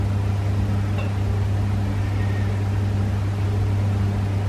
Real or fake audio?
real